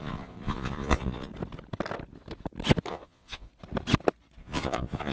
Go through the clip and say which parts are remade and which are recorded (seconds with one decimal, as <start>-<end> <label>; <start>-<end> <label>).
0.0-1.3 remade; 1.3-2.9 recorded; 2.9-3.5 remade; 3.5-4.4 recorded; 4.4-5.1 remade

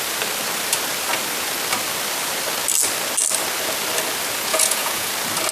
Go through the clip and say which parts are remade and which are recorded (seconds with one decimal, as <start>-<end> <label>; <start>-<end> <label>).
0.0-4.5 recorded; 4.5-5.1 remade; 5.1-5.5 recorded

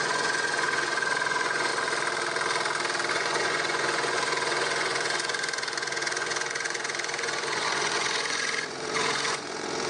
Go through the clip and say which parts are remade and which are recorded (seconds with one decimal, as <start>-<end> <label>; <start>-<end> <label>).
0.0-1.7 remade; 1.7-3.1 recorded; 3.1-9.9 remade

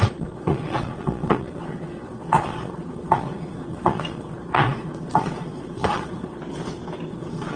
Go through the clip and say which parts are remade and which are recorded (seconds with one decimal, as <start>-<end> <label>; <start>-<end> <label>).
0.0-6.4 remade; 6.4-7.1 recorded; 7.1-7.6 remade